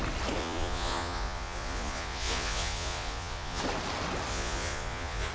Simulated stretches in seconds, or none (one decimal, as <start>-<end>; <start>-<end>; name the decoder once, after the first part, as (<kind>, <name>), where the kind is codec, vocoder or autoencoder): 0.4-3.6 (vocoder, Vocos); 4.3-5.3